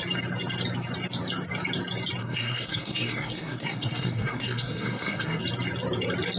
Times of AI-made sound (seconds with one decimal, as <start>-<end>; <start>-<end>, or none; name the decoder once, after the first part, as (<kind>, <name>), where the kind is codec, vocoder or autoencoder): 2.2-5.4 (codec, SNAC)